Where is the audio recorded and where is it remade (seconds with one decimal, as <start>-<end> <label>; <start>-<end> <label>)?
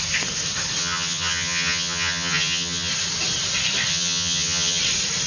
0.0-0.8 recorded; 0.8-2.9 remade; 2.9-3.9 recorded; 3.9-4.8 remade; 4.8-5.3 recorded